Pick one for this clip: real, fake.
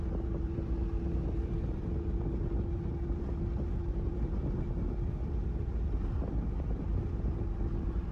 fake